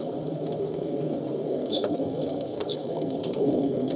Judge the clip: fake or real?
fake